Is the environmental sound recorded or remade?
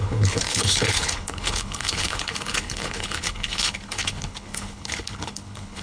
remade